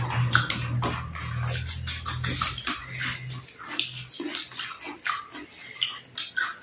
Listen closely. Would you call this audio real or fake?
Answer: real